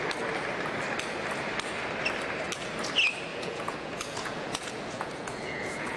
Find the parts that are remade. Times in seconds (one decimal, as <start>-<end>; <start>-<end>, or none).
3.3-6.0